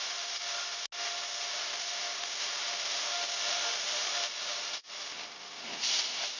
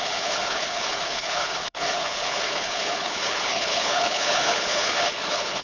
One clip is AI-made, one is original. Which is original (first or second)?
first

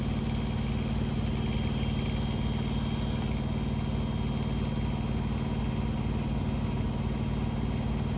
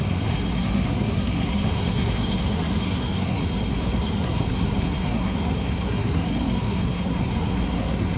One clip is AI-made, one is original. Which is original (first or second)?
first